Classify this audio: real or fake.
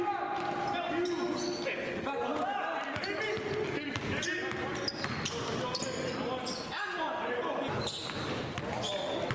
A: real